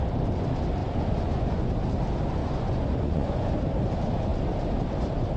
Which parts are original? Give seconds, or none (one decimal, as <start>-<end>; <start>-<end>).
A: 0.0-0.8; 1.7-2.4; 3.6-5.4